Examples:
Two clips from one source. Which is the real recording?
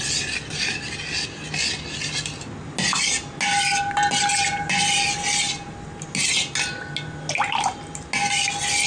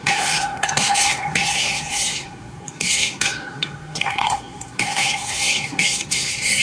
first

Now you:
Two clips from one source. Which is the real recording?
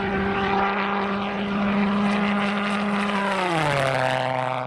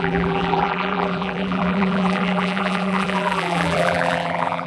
first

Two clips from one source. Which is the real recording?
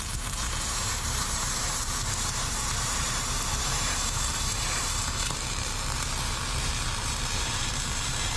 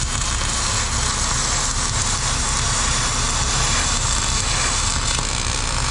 second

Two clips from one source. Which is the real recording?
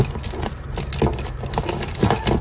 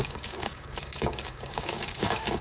first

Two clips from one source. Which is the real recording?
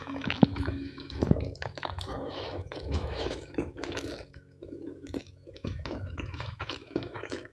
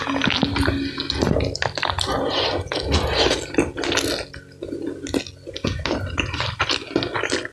second